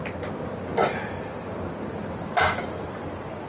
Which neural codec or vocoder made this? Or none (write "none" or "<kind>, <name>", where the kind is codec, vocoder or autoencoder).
none